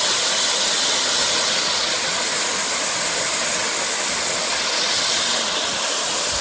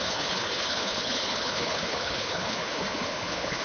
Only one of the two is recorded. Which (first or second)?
first